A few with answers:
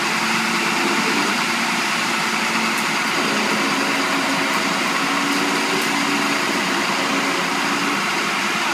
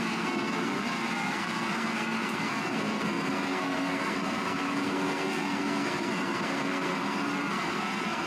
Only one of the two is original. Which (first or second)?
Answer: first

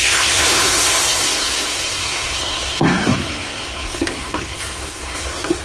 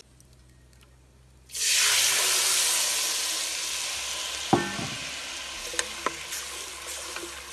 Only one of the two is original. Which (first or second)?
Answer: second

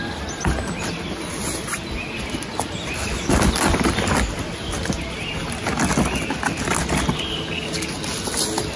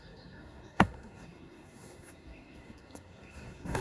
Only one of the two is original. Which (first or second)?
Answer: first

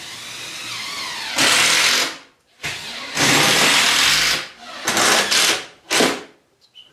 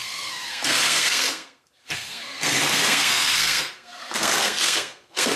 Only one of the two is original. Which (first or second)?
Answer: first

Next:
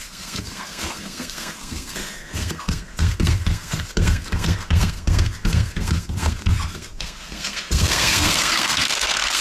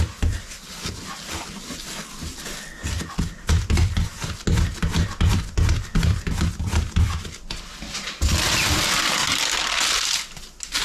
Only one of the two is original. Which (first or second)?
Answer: second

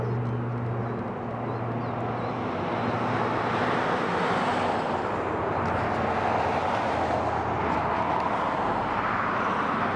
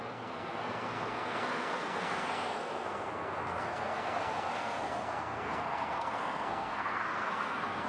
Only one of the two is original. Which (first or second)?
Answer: first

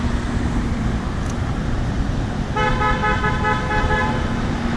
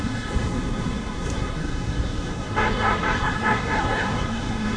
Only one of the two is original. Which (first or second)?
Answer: first